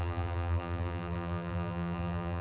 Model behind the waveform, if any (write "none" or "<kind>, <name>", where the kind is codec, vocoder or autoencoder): vocoder, BigVGAN v2